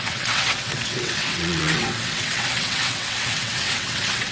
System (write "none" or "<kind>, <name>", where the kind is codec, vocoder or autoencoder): vocoder, WaveNeXt